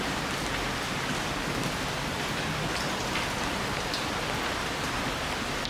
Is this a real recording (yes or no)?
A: yes